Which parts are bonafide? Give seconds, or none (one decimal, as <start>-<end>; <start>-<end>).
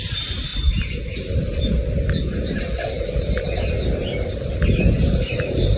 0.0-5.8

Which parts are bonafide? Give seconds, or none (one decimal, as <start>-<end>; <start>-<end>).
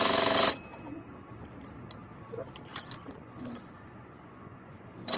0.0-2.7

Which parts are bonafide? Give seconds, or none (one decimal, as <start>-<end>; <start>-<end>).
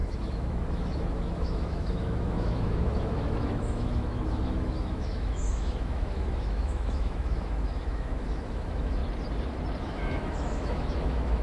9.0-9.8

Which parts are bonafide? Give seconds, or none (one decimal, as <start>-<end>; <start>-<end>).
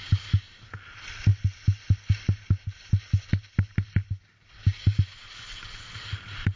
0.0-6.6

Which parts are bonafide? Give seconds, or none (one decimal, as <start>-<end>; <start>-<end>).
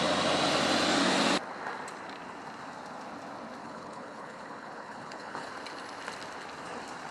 0.0-3.6; 5.5-7.1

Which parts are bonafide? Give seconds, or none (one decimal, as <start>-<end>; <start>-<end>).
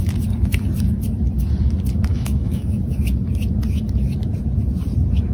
0.0-2.1; 2.8-5.3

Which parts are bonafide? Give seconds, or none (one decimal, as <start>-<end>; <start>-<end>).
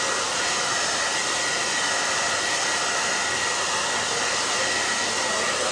0.0-5.7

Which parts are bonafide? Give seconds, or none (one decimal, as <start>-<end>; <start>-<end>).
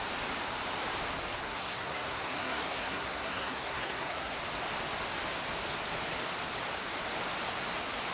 0.0-1.4; 4.4-8.1